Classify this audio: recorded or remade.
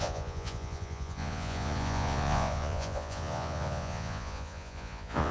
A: remade